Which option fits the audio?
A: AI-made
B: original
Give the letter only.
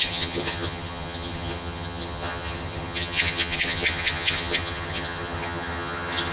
A